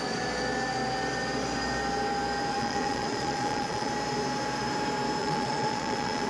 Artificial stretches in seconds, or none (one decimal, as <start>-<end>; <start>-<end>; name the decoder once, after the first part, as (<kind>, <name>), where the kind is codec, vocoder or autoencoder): 2.5-3.9 (vocoder, Vocos); 5.2-6.3